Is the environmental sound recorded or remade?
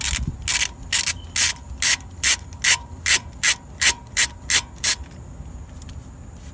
recorded